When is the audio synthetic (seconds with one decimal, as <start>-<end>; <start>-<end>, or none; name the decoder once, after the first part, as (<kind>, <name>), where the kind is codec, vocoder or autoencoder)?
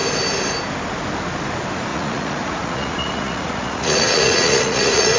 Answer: 1.9-5.2 (vocoder, Vocos)